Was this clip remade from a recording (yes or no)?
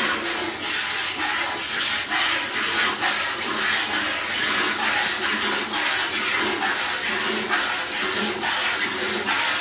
no